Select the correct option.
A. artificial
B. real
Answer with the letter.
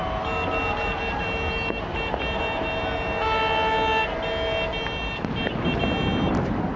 B